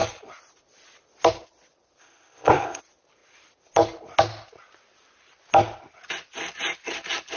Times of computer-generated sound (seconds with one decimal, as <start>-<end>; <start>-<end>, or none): 2.0-2.8